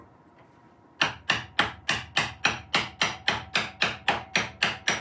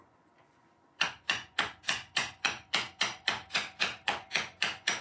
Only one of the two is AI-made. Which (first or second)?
second